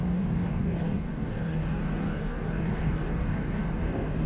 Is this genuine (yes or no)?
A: no